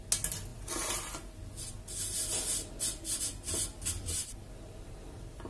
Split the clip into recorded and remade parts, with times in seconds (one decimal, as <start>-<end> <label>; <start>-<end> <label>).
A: 0.0-5.5 recorded